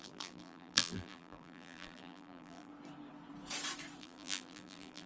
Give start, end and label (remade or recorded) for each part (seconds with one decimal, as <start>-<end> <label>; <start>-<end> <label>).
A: 0.0-2.7 remade; 2.7-4.0 recorded; 4.0-5.1 remade